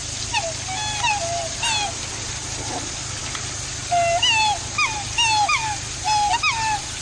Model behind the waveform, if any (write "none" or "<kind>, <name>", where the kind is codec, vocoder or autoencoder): none